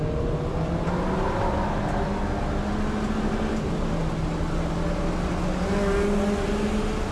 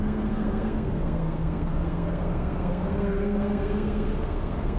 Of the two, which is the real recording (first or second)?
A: first